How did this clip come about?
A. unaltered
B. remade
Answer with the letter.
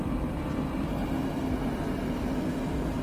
A